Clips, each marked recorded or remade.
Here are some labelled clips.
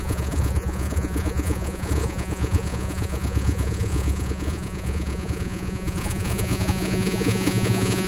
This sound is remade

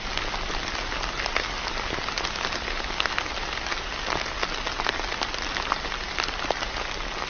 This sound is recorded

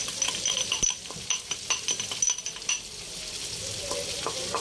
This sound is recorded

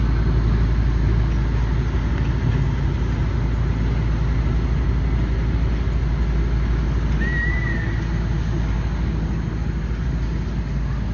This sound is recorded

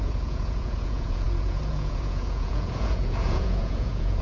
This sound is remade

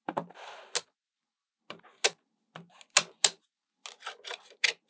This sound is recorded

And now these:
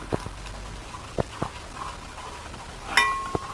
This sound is recorded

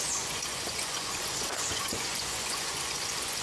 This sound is remade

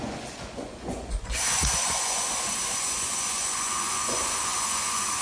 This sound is remade